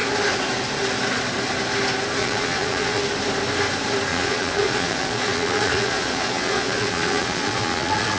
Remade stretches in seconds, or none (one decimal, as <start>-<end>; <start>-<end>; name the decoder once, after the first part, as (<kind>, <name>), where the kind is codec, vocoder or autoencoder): 2.2-3.0 (vocoder, Vocos); 4.1-8.2